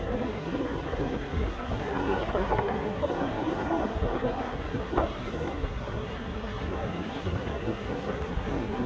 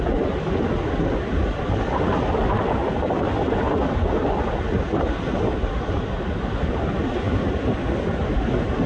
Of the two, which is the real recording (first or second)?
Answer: second